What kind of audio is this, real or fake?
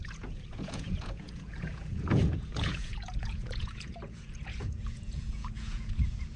fake